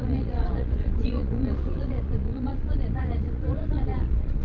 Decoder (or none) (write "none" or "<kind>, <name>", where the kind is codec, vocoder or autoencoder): vocoder, Vocos